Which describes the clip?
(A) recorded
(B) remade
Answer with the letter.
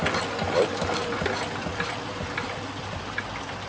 A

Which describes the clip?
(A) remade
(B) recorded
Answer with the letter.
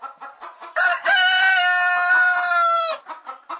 B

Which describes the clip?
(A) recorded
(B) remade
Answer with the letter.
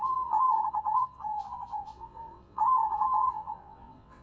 B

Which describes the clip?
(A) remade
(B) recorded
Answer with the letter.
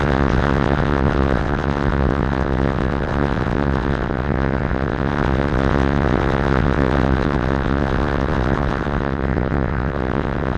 A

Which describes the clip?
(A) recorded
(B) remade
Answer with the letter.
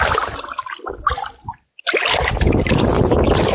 A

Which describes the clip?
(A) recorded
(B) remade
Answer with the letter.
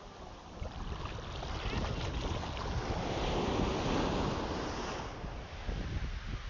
A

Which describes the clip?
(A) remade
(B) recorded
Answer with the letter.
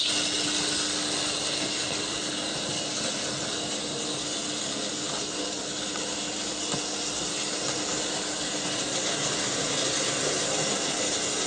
B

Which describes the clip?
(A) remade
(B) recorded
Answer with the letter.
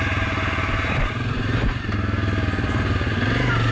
B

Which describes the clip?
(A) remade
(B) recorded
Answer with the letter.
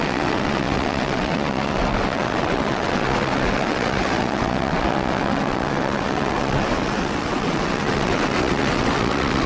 A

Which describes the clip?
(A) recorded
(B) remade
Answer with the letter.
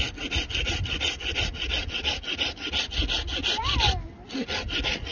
A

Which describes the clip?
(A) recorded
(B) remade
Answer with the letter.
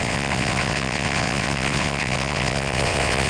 B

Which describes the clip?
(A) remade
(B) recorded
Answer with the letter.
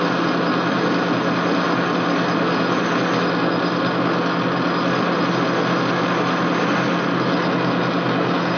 B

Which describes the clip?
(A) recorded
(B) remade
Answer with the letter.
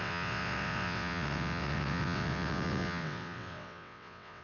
B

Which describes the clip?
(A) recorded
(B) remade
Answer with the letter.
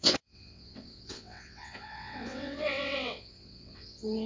B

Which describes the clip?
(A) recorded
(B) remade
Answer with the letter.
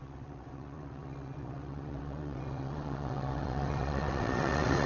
B